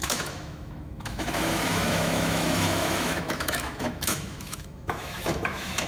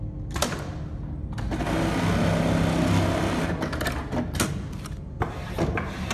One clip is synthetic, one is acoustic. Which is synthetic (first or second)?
first